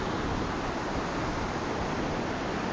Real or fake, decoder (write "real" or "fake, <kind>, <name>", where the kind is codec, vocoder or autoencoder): real